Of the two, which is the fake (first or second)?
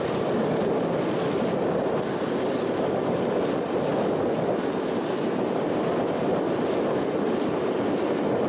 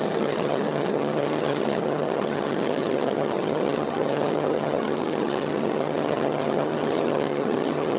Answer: second